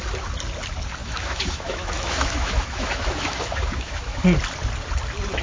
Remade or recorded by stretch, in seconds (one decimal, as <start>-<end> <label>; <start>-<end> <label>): 0.0-1.0 recorded; 1.0-4.2 remade; 4.2-5.4 recorded